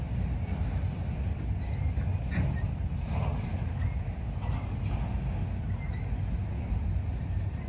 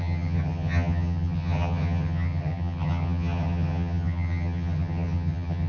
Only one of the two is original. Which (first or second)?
first